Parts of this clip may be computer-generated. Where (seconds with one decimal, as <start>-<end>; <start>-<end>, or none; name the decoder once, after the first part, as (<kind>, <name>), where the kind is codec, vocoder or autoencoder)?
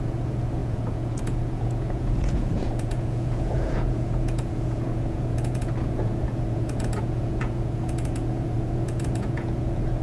0.0-10.0 (vocoder, Vocos)